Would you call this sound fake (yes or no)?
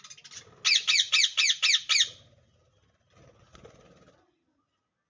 no